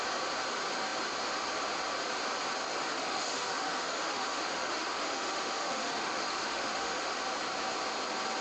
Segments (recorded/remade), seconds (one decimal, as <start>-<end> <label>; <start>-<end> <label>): 0.0-2.9 recorded; 2.9-7.2 remade; 7.2-8.4 recorded